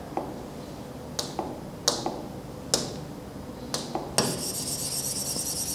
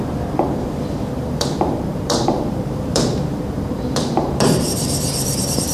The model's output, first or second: second